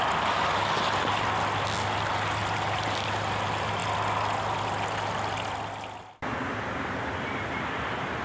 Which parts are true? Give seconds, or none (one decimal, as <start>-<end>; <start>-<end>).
0.0-8.2